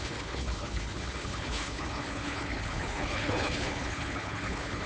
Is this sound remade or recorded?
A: remade